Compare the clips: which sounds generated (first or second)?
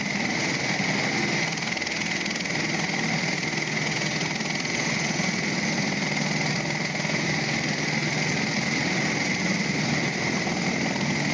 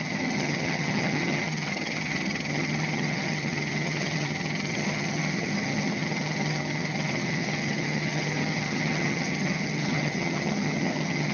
second